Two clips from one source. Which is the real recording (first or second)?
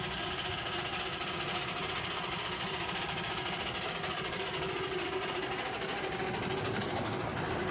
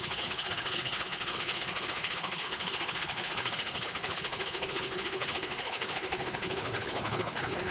first